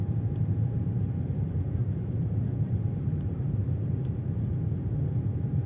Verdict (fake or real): fake